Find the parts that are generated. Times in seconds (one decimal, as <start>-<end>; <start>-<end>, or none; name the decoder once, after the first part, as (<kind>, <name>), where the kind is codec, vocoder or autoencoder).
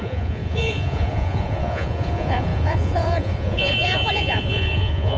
0.0-5.2 (vocoder, Vocos)